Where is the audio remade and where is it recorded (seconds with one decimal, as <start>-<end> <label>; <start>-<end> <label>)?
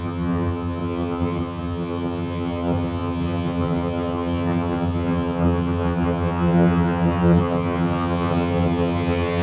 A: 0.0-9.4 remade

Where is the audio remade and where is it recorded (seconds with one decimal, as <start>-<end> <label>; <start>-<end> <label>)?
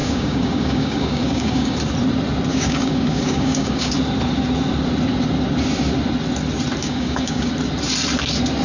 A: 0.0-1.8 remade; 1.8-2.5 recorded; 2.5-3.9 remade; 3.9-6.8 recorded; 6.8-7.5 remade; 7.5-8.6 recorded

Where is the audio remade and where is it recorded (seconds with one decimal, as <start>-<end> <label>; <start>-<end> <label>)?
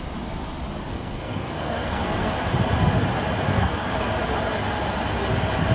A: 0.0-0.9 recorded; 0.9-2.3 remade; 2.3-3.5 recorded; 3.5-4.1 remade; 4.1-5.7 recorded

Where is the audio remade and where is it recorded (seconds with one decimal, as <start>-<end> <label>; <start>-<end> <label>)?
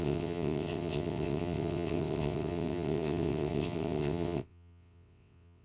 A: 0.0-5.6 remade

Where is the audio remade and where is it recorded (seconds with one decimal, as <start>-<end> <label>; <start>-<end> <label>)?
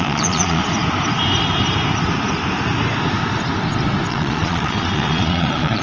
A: 0.0-0.6 remade; 0.6-4.1 recorded; 4.1-5.8 remade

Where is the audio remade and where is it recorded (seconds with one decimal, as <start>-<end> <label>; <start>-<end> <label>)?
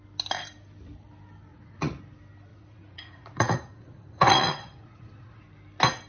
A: 0.0-1.5 recorded; 1.5-2.0 remade; 2.0-2.5 recorded; 2.5-5.4 remade; 5.4-6.1 recorded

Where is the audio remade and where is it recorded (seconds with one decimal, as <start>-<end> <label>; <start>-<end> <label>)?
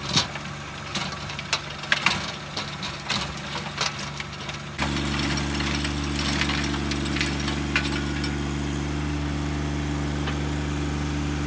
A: 0.0-11.5 recorded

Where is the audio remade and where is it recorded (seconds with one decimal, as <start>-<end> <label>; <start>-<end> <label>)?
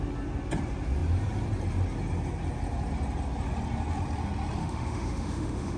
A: 0.0-4.6 recorded; 4.6-5.8 remade